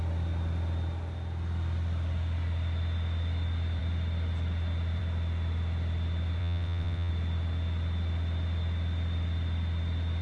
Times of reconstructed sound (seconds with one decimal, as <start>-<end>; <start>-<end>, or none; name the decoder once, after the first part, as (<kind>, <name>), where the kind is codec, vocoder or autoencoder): 6.4-7.1 (vocoder, WaveNeXt)